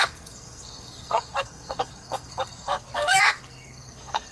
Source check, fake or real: fake